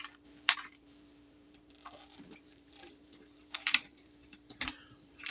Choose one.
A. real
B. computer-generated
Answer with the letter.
B